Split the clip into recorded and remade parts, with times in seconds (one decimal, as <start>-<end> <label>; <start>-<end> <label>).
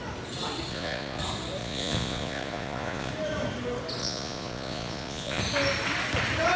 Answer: 0.0-0.7 recorded; 0.7-1.2 remade; 1.2-1.6 recorded; 1.6-3.1 remade; 3.1-4.0 recorded; 4.0-5.4 remade; 5.4-6.6 recorded